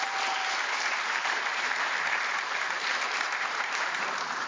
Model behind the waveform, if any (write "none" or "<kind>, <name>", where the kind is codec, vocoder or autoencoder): vocoder, BigVGAN v2